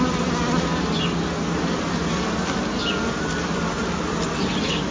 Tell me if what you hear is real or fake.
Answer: real